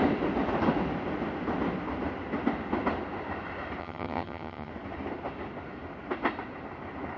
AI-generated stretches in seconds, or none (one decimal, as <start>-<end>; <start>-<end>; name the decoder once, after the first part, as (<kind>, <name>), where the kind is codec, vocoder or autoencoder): 3.8-4.7 (vocoder, HiFi-GAN)